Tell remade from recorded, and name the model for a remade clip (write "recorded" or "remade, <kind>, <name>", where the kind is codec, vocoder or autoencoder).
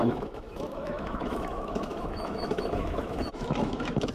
remade, autoencoder, DAC-VAE